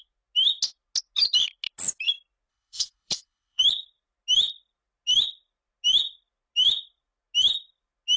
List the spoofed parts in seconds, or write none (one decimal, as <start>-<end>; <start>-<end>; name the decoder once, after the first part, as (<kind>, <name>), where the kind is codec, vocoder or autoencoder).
2.5-3.6 (codec, HILCodec)